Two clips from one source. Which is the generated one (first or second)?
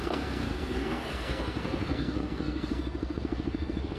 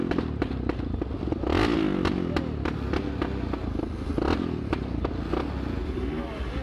first